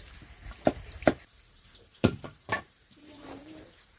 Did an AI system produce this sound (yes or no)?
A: yes